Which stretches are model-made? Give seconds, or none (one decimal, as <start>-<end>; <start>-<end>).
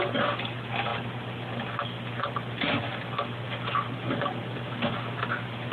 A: none